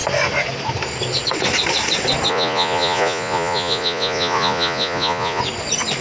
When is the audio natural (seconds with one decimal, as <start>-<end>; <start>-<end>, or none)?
0.0-2.3; 5.4-6.0